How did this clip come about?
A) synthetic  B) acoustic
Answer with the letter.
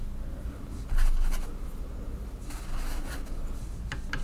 B